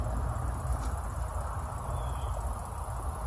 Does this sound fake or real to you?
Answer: real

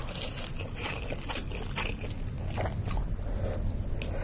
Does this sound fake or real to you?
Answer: real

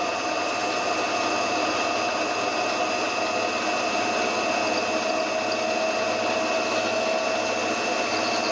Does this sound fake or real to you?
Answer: real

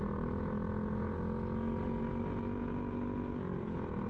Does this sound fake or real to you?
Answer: real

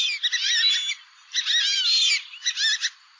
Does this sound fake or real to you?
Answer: real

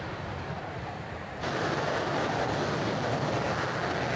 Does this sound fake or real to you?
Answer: real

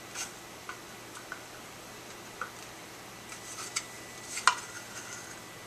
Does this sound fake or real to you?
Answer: real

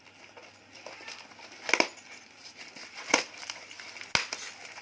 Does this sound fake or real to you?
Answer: real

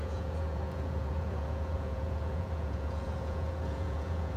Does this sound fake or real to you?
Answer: fake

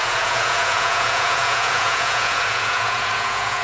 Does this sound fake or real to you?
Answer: fake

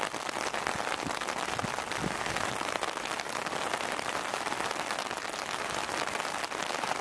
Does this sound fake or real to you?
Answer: real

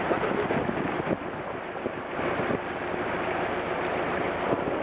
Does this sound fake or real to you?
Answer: real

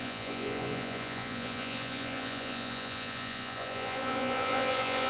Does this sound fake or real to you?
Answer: fake